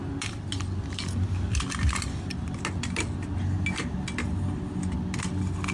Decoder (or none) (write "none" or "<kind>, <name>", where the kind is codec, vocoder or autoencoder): none